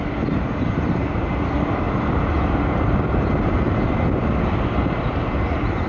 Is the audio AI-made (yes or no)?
no